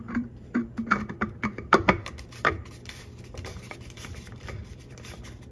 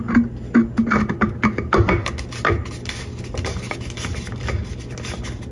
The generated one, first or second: first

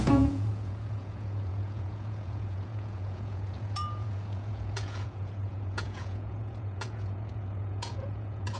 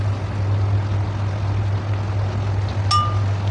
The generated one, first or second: first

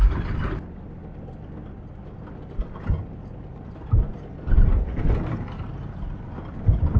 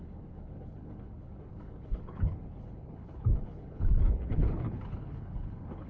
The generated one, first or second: second